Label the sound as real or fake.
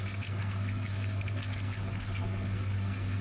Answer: fake